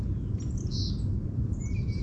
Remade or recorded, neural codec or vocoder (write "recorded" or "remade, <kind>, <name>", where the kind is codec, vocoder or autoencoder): recorded